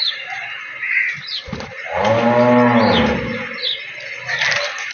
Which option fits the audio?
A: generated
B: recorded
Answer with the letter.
B